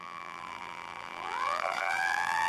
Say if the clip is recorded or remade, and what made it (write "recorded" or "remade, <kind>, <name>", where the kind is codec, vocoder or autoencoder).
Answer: remade, vocoder, BigVGAN v2